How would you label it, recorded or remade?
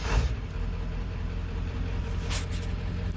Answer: remade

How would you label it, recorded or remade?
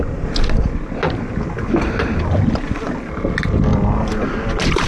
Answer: recorded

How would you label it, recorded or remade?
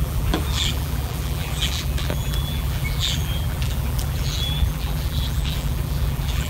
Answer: remade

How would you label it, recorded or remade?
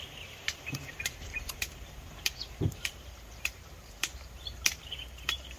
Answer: remade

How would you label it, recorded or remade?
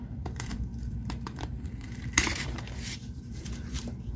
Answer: remade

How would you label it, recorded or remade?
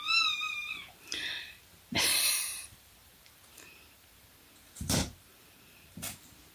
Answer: remade